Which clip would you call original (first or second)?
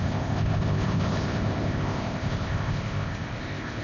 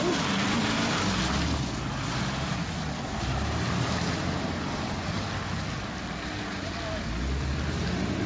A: second